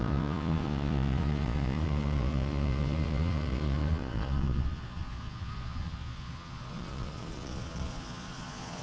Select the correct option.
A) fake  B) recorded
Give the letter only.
A